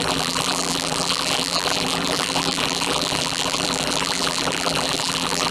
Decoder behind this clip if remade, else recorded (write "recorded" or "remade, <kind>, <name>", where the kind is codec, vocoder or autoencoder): remade, vocoder, BigVGAN v2